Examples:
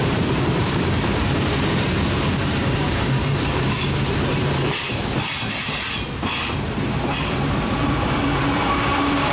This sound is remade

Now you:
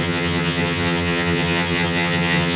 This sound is remade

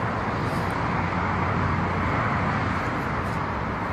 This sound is recorded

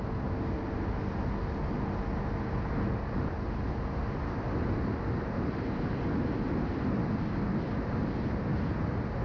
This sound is recorded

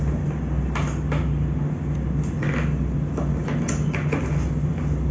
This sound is recorded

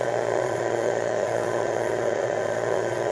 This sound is remade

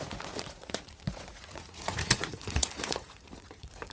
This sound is remade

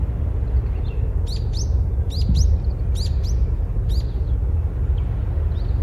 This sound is recorded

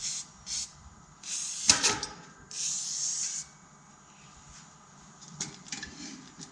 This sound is recorded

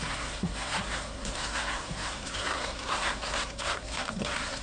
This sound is remade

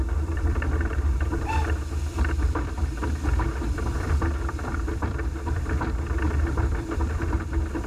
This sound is remade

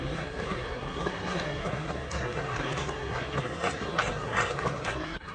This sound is remade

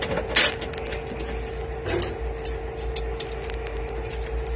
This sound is recorded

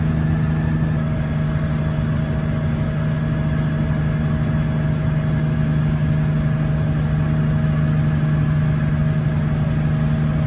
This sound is recorded